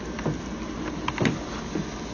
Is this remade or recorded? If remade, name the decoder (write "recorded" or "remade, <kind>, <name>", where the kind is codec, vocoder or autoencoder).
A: recorded